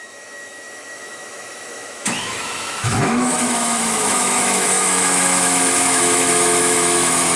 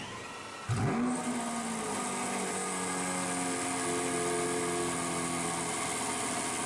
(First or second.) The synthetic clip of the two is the first